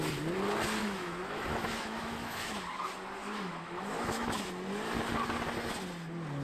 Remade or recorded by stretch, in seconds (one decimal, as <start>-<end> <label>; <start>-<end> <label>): 0.0-0.8 recorded; 0.8-2.6 remade; 2.6-3.2 recorded; 3.2-4.5 remade; 4.5-6.4 recorded